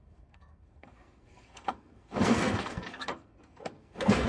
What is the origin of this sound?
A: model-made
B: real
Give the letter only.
A